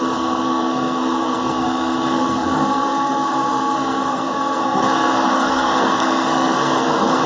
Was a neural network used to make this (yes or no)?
yes